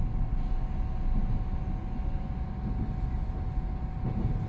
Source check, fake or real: real